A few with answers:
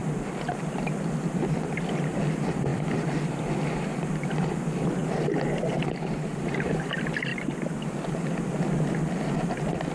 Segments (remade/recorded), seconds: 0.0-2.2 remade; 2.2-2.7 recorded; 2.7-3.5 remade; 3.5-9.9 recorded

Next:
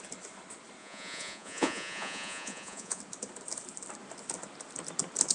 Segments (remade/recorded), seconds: 0.0-0.8 recorded; 0.8-3.0 remade; 3.0-5.3 recorded

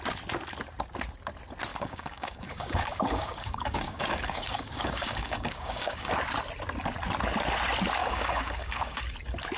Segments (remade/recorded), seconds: 0.0-1.7 recorded; 1.7-6.1 remade; 6.1-8.0 recorded; 8.0-9.0 remade; 9.0-9.6 recorded

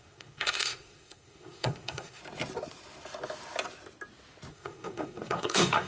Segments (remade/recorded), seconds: 0.0-2.2 remade; 2.2-4.5 recorded; 4.5-5.9 remade

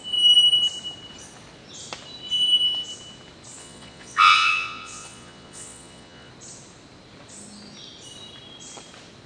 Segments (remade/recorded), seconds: 0.0-3.6 recorded; 3.6-6.3 remade; 6.3-9.3 recorded

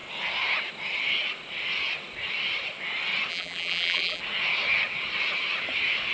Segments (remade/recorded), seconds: 0.0-3.3 recorded; 3.3-4.2 remade; 4.2-6.1 recorded

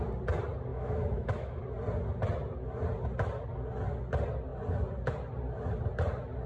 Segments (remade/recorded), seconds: 0.0-0.7 recorded; 0.7-1.6 remade; 1.6-6.5 recorded

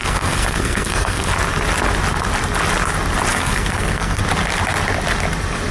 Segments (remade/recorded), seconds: 0.0-1.3 remade; 1.3-3.3 recorded; 3.3-4.2 remade; 4.2-5.7 recorded